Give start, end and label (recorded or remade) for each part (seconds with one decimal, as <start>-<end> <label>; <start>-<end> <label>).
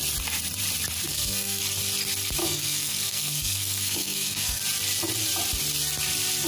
0.0-1.1 recorded; 1.1-1.6 remade; 1.6-2.4 recorded; 2.4-4.6 remade; 4.6-6.5 recorded